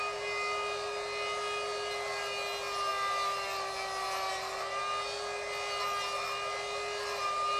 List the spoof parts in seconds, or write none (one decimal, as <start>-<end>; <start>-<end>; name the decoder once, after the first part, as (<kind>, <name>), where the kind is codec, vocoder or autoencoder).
none